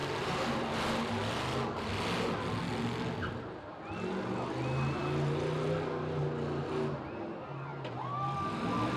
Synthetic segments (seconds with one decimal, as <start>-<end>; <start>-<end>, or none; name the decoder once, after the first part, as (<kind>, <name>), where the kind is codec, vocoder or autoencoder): none